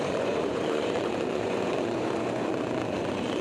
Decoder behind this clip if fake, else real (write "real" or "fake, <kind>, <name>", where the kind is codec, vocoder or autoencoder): fake, vocoder, Vocos